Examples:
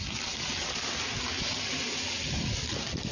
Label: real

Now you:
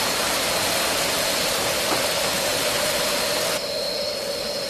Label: real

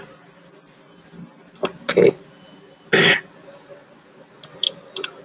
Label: real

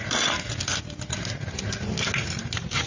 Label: real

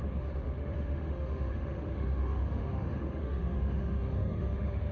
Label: fake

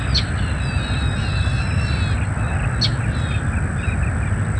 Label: real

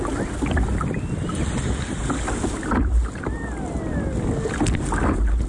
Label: real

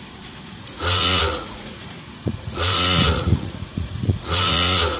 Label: fake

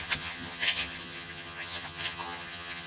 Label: fake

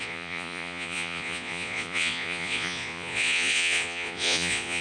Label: fake